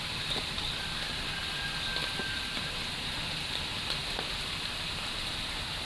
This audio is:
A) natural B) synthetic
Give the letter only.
A